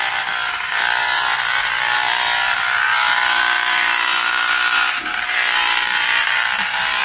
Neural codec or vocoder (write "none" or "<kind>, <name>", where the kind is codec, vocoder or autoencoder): vocoder, BigVGAN v2